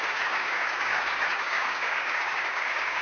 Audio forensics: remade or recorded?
remade